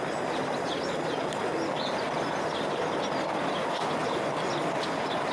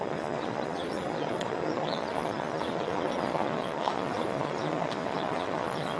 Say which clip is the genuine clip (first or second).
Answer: first